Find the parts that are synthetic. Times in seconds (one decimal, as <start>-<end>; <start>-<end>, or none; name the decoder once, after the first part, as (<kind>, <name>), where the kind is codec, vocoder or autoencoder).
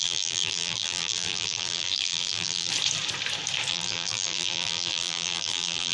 0.0-2.7 (vocoder, BigVGAN v2); 3.7-5.9